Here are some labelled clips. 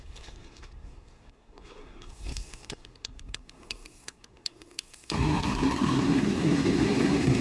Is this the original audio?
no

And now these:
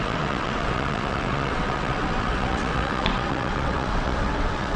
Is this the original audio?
no